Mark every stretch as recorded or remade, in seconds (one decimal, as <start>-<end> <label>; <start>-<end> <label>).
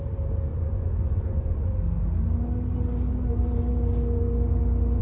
0.0-0.5 recorded; 0.5-1.6 remade; 1.6-5.0 recorded